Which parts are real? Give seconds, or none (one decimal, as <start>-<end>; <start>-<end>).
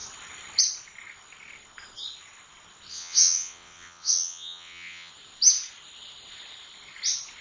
0.0-2.9; 5.1-7.4